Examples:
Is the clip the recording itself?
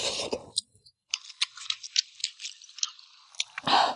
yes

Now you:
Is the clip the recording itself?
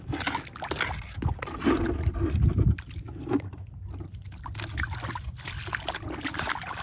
yes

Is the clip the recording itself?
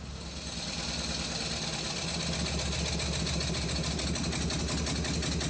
yes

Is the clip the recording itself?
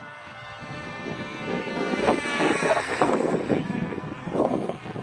no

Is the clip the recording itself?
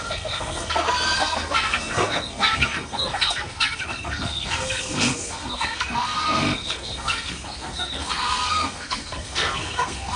no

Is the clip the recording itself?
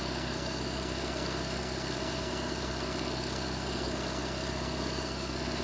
no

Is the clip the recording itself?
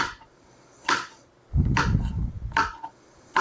yes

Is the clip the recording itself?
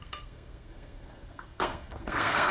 no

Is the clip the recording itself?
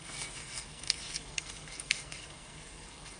no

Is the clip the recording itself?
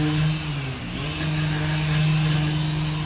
yes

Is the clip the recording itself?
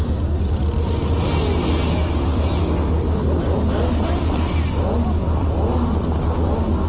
yes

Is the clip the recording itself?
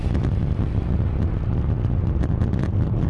yes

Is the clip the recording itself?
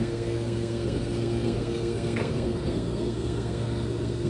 no